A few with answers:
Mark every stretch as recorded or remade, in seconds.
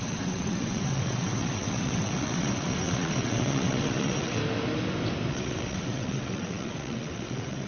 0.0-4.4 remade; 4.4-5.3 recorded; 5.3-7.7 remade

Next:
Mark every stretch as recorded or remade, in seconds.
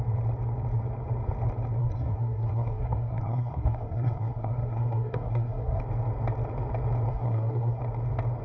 0.0-1.8 recorded; 1.8-5.8 remade; 5.8-7.1 recorded; 7.1-7.8 remade; 7.8-8.4 recorded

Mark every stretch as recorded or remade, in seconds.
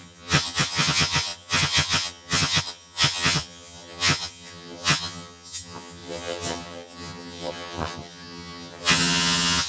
0.0-9.7 remade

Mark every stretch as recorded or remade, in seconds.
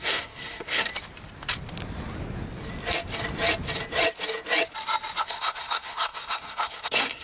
0.0-0.9 remade; 0.9-5.2 recorded; 5.2-7.2 remade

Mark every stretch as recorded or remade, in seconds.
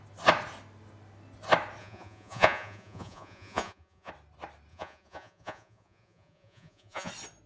0.0-1.8 recorded; 1.8-4.1 remade; 4.1-4.7 recorded; 4.7-7.1 remade; 7.1-7.5 recorded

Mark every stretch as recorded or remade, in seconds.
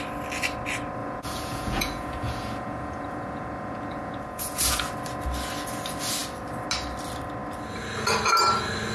0.0-1.0 recorded; 1.0-4.8 remade; 4.8-8.9 recorded